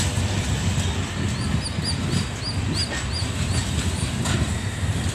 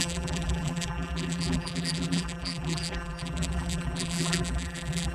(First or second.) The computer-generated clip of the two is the second